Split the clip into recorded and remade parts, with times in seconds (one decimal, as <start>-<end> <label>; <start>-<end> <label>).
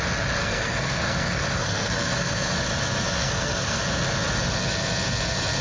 0.0-0.4 recorded; 0.4-2.5 remade; 2.5-3.2 recorded; 3.2-3.8 remade; 3.8-5.6 recorded